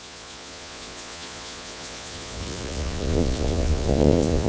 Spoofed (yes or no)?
yes